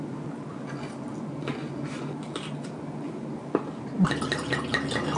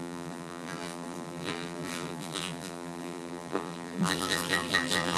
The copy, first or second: second